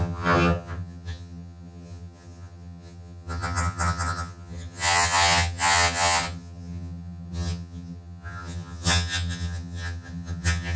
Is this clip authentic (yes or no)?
no